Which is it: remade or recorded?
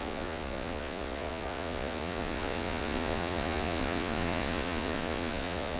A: remade